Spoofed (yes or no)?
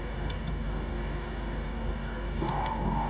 yes